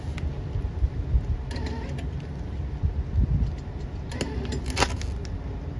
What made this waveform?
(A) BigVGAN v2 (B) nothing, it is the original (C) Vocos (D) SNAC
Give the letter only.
B